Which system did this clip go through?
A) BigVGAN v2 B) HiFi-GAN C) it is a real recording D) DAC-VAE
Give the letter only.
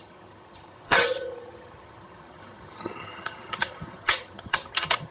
B